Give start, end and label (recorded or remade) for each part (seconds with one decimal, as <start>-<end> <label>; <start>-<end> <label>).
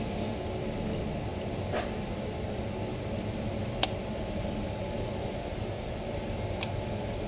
0.0-7.3 recorded